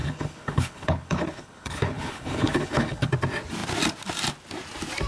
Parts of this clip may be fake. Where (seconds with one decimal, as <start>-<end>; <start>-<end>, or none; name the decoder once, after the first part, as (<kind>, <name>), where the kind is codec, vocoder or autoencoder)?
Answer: 0.0-3.1 (codec, HILCodec)